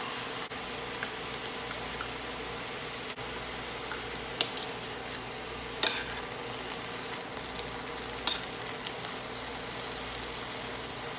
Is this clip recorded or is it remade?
recorded